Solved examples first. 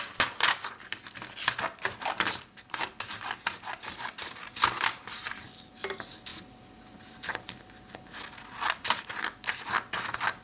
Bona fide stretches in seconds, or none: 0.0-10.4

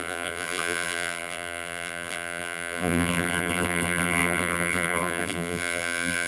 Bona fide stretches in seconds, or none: none

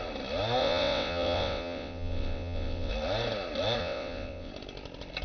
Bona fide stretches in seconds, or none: 0.0-0.6; 2.9-3.8; 4.5-5.2

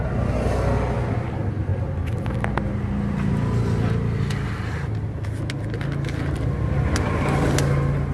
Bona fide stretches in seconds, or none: 0.0-8.1

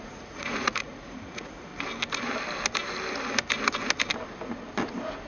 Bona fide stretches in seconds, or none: 1.7-5.3

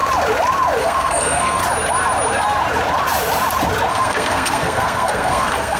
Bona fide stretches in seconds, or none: 0.0-0.8; 1.6-3.9

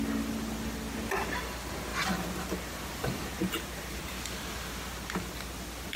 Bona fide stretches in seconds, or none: 0.0-1.9; 4.2-6.0